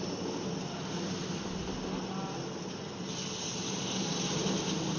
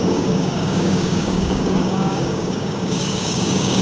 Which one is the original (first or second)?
first